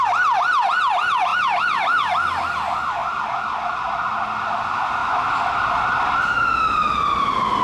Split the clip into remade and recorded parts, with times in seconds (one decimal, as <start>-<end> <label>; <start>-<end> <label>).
0.0-5.0 recorded; 5.0-5.6 remade; 5.6-7.6 recorded